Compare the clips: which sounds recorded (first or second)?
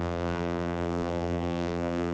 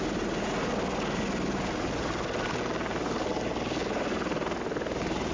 second